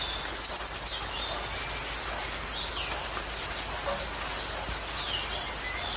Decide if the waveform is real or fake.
real